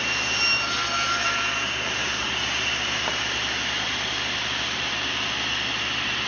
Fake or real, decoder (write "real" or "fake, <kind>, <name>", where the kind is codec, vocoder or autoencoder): fake, vocoder, BigVGAN v2